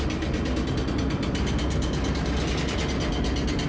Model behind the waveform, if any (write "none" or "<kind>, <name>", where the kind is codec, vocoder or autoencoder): none